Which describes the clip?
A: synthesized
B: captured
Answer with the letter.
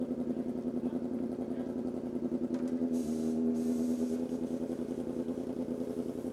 B